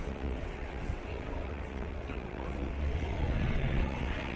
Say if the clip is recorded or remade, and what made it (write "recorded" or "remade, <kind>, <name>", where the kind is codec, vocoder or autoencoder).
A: remade, vocoder, WaveNeXt